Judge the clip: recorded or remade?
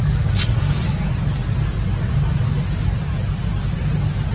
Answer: recorded